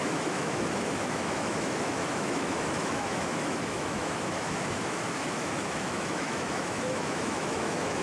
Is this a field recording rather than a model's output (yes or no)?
no